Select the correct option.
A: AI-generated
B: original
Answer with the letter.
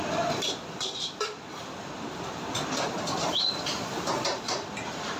A